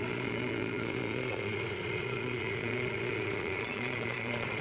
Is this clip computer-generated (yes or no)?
yes